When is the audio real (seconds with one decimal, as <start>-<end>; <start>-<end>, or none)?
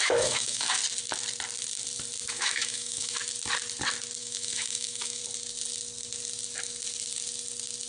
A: 0.8-2.3; 3.2-4.2; 5.2-7.9